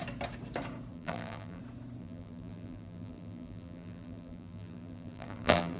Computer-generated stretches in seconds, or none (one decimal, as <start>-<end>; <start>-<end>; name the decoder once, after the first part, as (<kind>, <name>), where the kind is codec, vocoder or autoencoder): 0.9-1.6 (vocoder, BigVGAN v2); 2.0-5.8